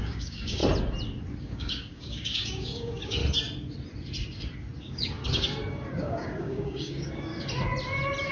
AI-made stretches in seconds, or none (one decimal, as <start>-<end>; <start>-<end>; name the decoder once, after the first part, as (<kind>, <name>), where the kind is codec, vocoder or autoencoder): 0.0-0.6 (codec, DAC); 1.4-3.2; 4.8-5.2; 6.0-7.3